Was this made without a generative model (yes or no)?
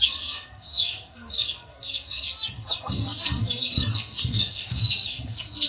no